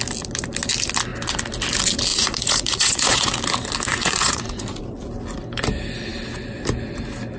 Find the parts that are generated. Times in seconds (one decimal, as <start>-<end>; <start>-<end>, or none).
2.1-3.4; 3.9-4.8